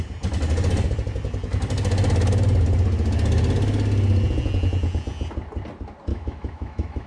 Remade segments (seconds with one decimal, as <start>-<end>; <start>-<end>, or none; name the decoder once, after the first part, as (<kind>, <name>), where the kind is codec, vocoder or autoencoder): 6.1-7.1 (autoencoder, DAC-VAE)

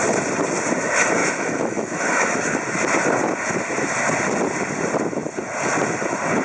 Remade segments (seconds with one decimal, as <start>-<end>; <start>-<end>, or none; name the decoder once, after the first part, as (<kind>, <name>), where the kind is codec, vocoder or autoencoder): 1.2-2.4 (autoencoder, DAC-VAE)

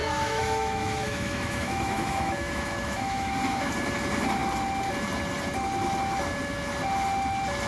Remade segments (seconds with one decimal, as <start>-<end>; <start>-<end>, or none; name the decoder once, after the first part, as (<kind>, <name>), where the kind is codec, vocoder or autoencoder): 0.0-3.7 (autoencoder, DAC-VAE)